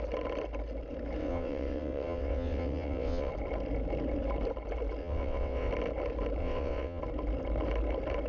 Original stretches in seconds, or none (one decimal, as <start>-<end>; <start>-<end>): 0.0-1.2; 3.3-5.0; 5.7-6.4; 7.0-8.3